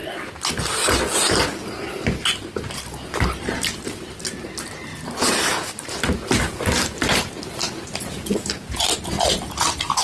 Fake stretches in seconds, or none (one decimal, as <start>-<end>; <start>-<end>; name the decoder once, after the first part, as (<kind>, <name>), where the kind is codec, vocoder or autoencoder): 4.9-6.5 (vocoder, BigVGAN v2)